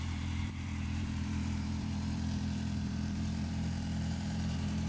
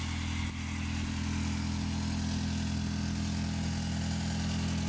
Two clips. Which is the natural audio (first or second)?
second